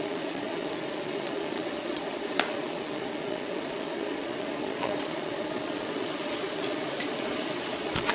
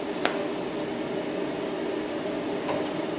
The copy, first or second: first